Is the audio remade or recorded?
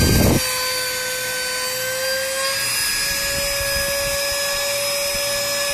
recorded